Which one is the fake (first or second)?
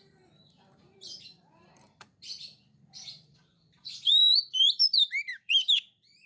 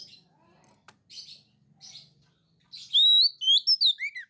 first